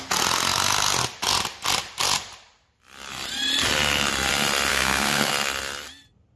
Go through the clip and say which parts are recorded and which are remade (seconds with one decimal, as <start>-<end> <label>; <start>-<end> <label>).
0.0-4.7 recorded; 4.7-5.3 remade; 5.3-6.4 recorded